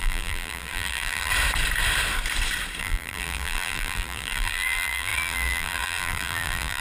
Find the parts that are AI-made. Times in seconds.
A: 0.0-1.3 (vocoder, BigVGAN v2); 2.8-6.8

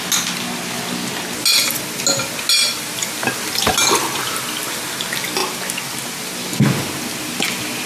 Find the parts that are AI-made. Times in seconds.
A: none

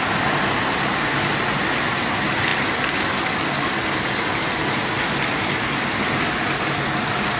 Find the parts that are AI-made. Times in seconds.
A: none

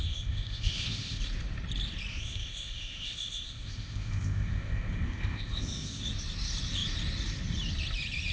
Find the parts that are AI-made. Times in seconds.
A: 0.0-1.2 (codec, ZipCodec); 2.1-6.0

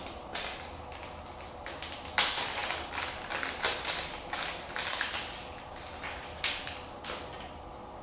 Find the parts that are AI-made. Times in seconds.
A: none

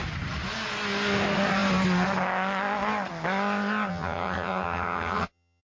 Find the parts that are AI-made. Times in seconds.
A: 3.9-5.6 (vocoder, HiFi-GAN)

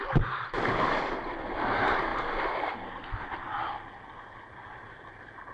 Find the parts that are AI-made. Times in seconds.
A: none